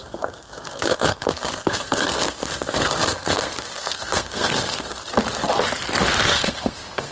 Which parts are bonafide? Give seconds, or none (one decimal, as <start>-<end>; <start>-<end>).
5.0-6.3